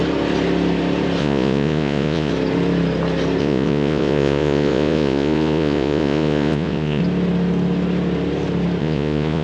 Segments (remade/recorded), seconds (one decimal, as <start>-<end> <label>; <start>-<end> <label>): 0.0-1.2 recorded; 1.2-2.3 remade; 2.3-3.4 recorded; 3.4-7.0 remade; 7.0-8.8 recorded; 8.8-9.4 remade